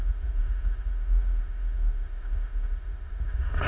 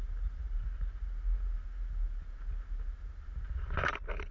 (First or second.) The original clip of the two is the second